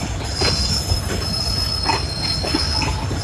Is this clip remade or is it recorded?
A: recorded